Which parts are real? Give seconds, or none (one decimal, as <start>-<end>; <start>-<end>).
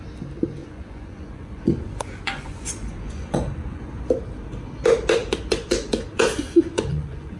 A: 0.0-0.6; 4.0-5.2